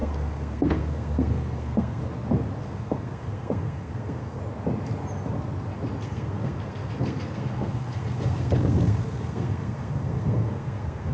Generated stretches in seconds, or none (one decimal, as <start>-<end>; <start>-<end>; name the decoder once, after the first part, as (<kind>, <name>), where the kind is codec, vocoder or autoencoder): 0.0-2.0 (codec, SNAC); 2.6-4.4; 6.0-11.1